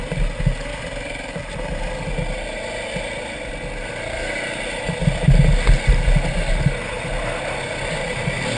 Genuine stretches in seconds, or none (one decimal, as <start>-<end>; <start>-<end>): 0.0-0.7; 1.7-8.6